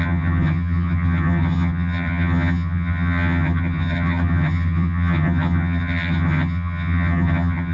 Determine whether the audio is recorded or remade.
remade